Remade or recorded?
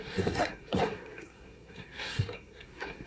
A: remade